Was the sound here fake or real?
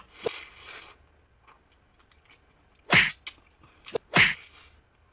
real